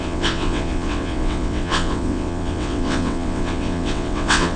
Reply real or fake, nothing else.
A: fake